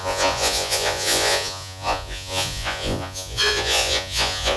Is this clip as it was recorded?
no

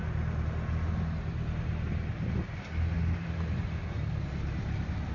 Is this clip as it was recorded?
yes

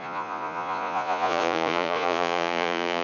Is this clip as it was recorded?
no